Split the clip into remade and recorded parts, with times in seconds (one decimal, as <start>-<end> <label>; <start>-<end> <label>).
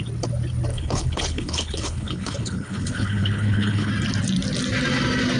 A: 0.0-0.7 recorded; 0.7-3.9 remade; 3.9-5.4 recorded